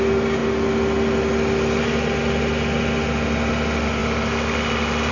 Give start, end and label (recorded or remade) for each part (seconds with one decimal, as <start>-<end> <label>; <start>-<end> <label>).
0.0-5.1 recorded